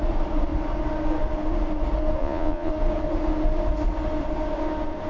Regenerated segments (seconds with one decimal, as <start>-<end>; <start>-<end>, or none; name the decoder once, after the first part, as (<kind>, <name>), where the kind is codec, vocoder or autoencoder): 2.2-2.7 (vocoder, Vocos)